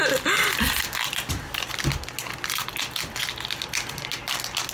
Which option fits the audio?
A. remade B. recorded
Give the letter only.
B